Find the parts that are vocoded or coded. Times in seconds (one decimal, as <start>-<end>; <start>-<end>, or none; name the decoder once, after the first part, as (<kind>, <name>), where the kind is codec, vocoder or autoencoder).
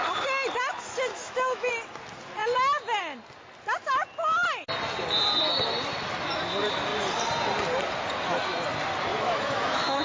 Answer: 1.1-1.7 (autoencoder, DAC-VAE); 9.1-10.0